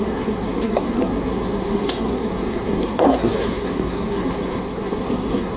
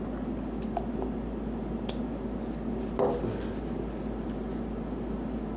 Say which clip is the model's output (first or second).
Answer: first